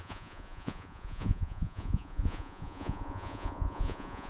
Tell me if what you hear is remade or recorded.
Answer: remade